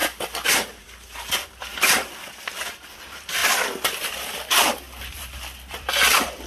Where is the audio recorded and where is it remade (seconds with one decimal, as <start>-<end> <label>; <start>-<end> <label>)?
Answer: 0.0-0.8 recorded; 0.8-3.4 remade; 3.4-4.0 recorded; 4.0-6.5 remade